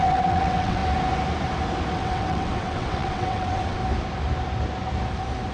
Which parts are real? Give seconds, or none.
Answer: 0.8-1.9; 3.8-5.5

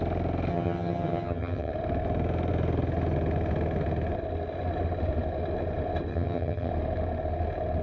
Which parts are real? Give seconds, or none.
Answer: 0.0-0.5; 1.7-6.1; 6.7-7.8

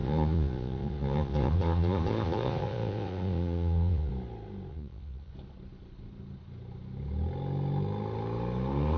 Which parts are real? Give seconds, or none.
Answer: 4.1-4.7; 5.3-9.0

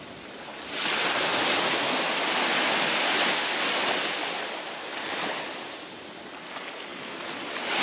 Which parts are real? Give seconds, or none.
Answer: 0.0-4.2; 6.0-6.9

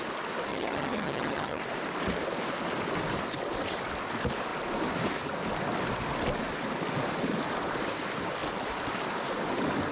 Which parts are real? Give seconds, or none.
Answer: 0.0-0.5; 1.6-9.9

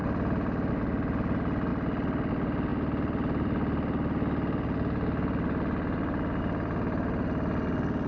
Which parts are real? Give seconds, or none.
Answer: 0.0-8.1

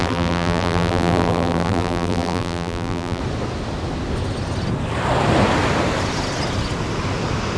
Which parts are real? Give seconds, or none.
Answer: 3.2-7.6